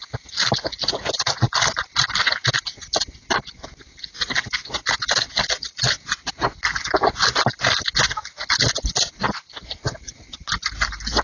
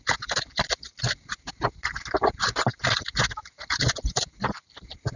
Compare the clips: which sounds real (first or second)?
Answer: first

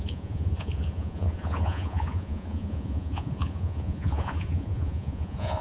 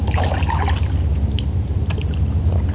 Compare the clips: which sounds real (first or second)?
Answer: second